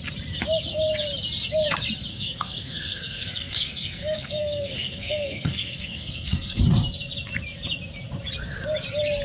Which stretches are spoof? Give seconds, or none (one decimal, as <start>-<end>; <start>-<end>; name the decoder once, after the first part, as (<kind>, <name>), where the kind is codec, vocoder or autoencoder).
2.1-6.6 (codec, SNAC)